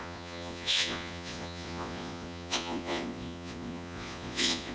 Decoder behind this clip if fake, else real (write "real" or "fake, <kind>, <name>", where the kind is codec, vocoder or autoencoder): fake, vocoder, Vocos